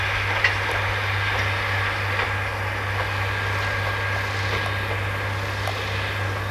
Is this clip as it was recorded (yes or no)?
yes